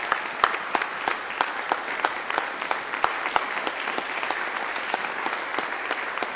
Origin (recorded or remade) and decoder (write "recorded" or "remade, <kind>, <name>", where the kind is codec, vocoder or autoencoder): recorded